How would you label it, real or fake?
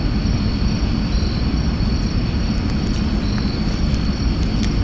real